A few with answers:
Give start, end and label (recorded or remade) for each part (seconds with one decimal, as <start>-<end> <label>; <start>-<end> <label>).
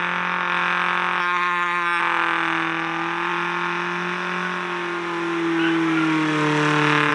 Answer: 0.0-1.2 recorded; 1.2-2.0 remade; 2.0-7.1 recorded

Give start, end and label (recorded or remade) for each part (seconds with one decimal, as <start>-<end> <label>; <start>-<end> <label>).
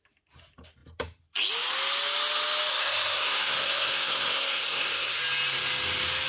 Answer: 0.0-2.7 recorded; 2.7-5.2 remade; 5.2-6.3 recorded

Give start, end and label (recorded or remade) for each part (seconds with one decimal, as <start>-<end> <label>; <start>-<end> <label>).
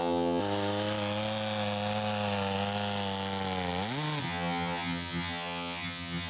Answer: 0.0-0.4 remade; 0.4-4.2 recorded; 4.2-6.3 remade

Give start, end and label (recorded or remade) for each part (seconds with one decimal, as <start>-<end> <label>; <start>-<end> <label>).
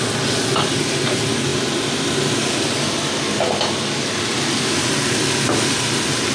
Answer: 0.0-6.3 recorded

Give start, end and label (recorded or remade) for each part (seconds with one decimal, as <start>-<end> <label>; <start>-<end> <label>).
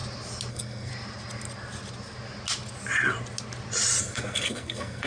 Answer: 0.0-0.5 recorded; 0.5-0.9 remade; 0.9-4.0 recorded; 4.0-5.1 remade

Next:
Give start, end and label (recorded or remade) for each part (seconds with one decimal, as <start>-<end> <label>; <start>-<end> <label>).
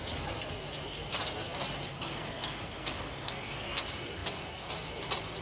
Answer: 0.0-1.9 recorded; 1.9-3.8 remade; 3.8-5.4 recorded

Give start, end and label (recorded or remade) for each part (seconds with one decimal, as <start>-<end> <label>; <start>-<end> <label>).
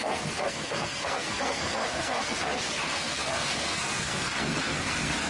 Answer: 0.0-5.3 remade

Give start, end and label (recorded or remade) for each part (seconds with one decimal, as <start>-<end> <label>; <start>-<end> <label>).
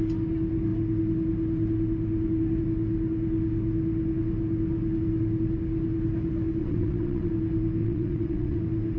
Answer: 0.0-6.6 recorded; 6.6-7.3 remade; 7.3-7.8 recorded; 7.8-8.6 remade; 8.6-9.0 recorded